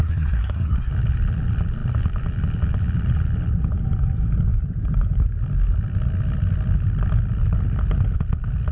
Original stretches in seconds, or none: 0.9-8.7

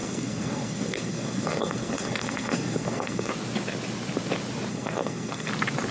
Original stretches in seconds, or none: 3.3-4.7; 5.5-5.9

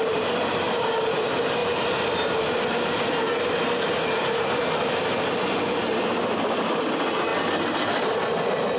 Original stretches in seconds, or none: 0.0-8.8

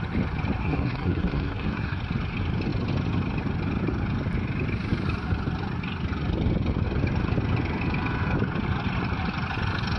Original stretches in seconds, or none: 0.0-0.6; 2.0-10.0